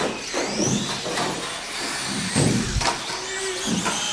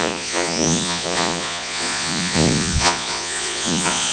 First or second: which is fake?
second